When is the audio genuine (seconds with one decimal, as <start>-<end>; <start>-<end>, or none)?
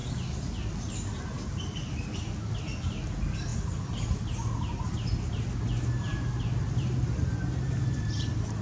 1.2-3.5; 4.2-6.1